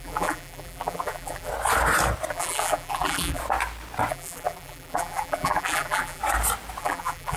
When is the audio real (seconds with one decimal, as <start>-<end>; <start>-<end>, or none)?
1.5-2.3; 3.4-4.1; 6.2-6.8